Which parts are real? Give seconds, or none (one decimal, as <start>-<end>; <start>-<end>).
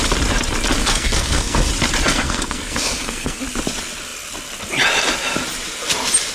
0.0-0.8; 1.7-2.1; 3.4-6.3